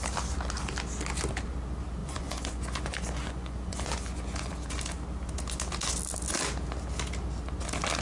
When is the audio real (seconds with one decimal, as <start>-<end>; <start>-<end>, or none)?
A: 0.0-2.0; 4.5-8.0